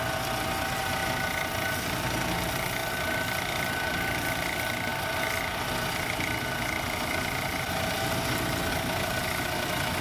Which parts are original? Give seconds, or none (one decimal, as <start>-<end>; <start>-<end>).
0.0-10.0